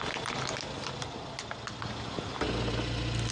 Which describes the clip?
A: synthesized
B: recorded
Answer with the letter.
B